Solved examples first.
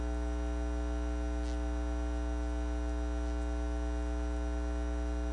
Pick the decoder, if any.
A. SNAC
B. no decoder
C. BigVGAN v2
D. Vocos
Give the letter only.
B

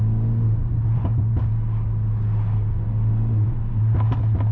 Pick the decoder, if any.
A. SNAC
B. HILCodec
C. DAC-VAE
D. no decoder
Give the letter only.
D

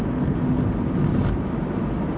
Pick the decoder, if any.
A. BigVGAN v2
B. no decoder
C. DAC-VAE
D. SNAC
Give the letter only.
B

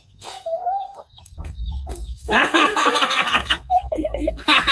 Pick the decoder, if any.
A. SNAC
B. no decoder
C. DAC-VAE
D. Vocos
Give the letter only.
A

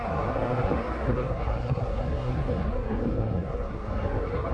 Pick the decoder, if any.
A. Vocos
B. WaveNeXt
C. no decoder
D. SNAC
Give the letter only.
D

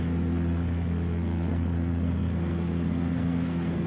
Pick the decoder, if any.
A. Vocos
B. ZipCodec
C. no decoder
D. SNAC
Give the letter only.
D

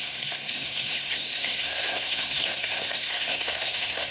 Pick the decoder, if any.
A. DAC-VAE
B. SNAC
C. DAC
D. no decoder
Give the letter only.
B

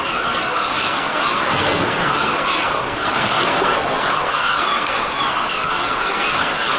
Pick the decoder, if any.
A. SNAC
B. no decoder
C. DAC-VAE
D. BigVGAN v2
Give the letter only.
A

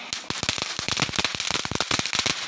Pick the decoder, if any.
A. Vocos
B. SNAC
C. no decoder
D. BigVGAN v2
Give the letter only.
C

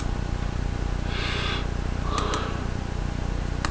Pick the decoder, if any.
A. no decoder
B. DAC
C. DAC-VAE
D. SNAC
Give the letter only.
A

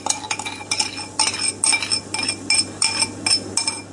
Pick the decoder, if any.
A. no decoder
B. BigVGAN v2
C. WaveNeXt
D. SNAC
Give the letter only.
A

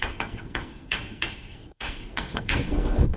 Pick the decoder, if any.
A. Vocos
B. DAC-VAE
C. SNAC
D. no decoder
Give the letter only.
C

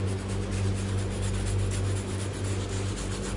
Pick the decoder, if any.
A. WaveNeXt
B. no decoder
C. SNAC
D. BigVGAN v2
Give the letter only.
B